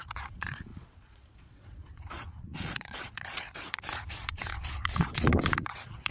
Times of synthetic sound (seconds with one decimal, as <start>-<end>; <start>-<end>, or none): 0.0-6.1